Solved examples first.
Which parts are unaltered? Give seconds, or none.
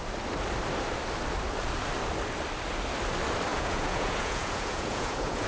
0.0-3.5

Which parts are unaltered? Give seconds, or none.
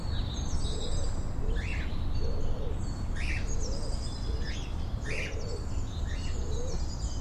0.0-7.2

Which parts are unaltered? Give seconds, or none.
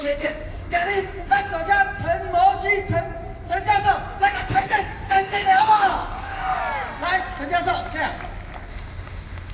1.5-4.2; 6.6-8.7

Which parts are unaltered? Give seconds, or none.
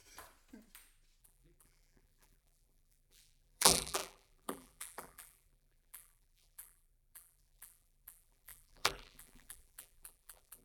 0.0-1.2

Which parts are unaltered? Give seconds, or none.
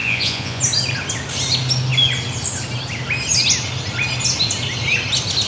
0.6-5.5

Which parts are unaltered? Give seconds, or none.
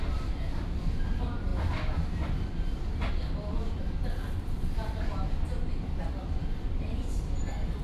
0.0-7.8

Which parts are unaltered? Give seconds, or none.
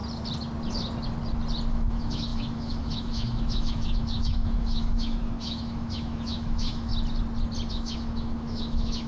0.0-1.7; 6.9-7.7